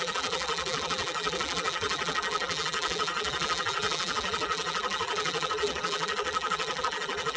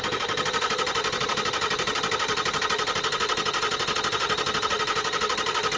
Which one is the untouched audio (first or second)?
second